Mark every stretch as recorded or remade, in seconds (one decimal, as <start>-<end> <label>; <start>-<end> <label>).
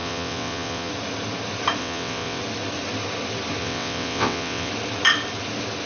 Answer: 0.0-0.9 remade; 0.9-1.8 recorded; 1.8-2.4 remade; 2.4-3.6 recorded; 3.6-4.7 remade; 4.7-5.9 recorded